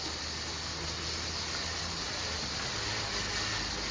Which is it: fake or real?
real